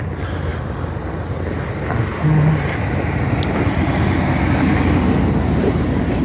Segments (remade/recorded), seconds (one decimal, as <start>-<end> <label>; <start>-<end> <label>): 0.0-0.5 recorded; 0.5-1.5 remade; 1.5-6.2 recorded